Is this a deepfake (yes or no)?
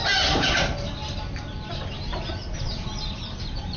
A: no